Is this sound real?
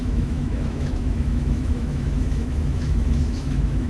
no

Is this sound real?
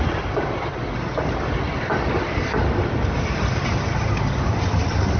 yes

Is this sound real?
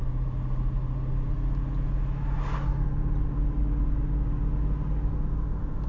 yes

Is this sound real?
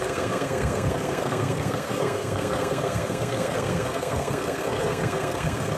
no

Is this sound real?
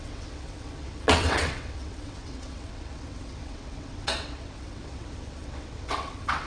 no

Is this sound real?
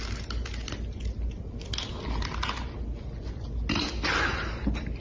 yes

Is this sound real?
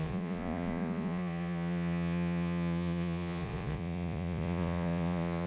no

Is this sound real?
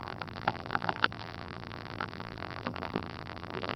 no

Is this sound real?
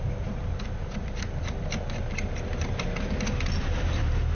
yes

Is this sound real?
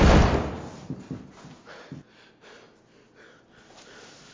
yes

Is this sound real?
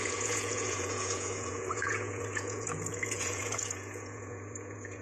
no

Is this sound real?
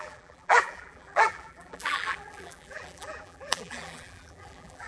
no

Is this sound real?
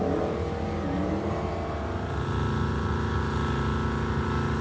yes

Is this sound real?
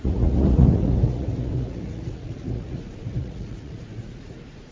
no